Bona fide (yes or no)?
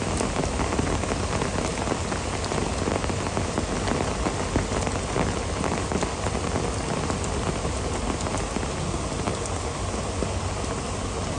yes